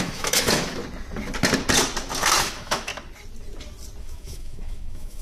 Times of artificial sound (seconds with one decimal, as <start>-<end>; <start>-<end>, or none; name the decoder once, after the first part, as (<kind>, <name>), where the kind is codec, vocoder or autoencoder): 0.0-0.8 (autoencoder, DAC-VAE); 2.4-2.9; 4.0-5.2